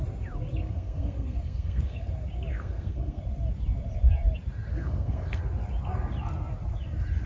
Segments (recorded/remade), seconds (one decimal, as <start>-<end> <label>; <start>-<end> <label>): 0.0-0.6 recorded; 0.6-2.1 remade; 2.1-2.5 recorded; 2.5-3.2 remade; 3.2-4.7 recorded; 4.7-5.4 remade; 5.4-7.3 recorded